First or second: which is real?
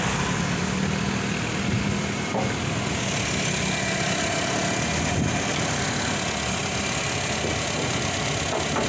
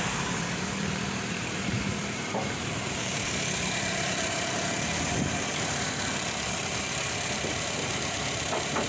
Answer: first